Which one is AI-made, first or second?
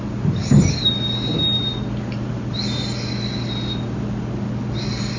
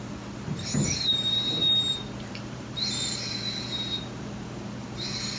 second